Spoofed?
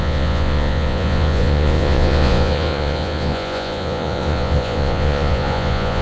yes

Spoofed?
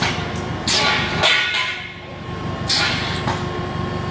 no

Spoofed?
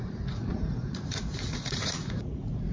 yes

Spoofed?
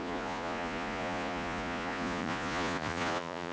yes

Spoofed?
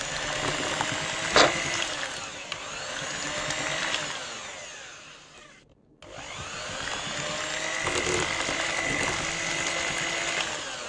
no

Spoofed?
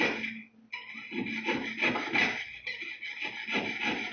no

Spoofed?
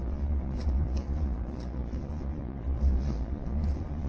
yes